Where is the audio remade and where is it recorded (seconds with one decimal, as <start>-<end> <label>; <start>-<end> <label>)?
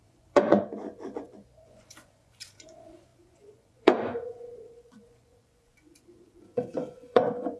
0.0-7.6 remade